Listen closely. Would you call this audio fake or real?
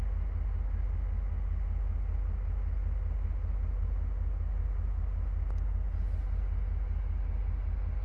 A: real